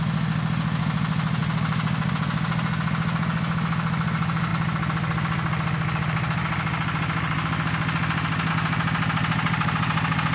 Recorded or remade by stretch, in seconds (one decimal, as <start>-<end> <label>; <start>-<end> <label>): 0.0-10.3 recorded